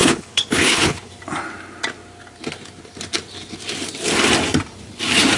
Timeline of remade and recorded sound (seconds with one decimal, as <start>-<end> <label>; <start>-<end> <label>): 0.0-1.1 remade; 1.1-5.4 recorded